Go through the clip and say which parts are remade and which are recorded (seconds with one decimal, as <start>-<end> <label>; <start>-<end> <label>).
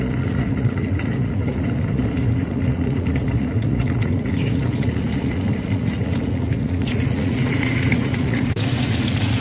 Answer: 0.0-9.4 remade